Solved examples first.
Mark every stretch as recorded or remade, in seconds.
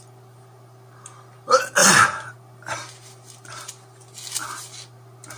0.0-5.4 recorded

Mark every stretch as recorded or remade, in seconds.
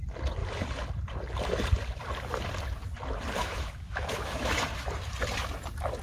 0.0-3.4 recorded; 3.4-4.6 remade; 4.6-6.0 recorded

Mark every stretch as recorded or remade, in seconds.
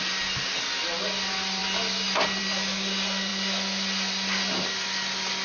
0.0-5.4 recorded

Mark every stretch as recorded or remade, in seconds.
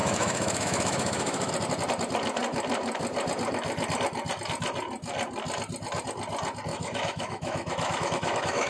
0.0-1.5 remade; 1.5-6.7 recorded; 6.7-8.7 remade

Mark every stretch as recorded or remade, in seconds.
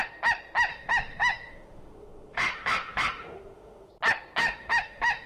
0.0-0.7 recorded; 0.7-3.9 remade; 3.9-4.4 recorded; 4.4-5.3 remade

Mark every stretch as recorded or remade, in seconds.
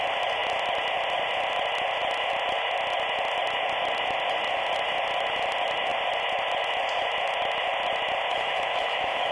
0.0-8.3 recorded; 8.3-9.3 remade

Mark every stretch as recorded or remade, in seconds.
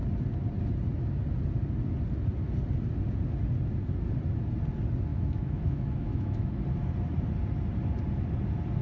0.0-5.1 recorded; 5.1-6.5 remade; 6.5-8.8 recorded